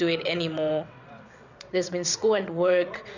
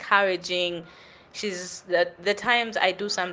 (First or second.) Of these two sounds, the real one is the second